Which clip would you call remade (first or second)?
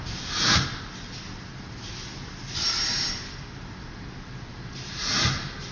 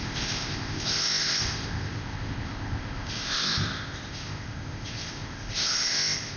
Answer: second